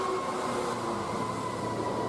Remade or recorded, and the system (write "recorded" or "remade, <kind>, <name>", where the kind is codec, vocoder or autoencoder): recorded